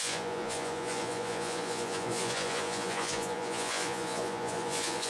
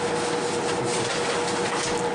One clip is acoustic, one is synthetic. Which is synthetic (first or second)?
first